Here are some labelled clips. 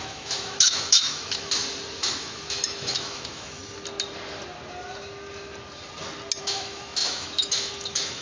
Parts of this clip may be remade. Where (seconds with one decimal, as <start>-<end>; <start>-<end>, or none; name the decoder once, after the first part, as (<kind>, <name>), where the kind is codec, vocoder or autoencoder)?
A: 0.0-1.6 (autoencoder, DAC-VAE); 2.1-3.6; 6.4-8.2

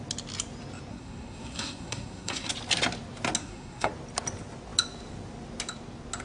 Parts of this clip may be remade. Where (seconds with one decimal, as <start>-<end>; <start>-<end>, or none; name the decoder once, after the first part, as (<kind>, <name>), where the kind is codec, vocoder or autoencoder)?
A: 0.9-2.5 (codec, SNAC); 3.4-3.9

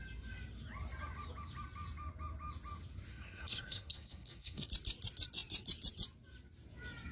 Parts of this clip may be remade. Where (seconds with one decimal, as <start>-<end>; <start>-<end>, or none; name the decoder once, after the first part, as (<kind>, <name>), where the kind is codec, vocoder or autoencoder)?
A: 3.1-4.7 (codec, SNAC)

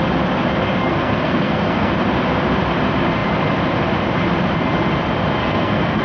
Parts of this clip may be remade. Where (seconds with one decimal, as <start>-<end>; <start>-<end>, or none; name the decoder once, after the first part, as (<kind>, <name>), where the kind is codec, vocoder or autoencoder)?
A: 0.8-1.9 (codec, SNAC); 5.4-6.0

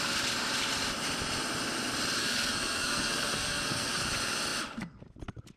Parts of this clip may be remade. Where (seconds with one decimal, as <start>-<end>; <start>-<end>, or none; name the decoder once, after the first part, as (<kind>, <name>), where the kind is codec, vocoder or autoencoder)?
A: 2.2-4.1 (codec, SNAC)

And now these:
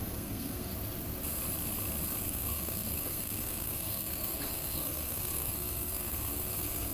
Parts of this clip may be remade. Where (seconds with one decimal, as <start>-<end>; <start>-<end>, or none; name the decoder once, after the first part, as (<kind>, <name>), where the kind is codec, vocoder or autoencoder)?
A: 0.0-0.7 (codec, SNAC); 2.2-6.9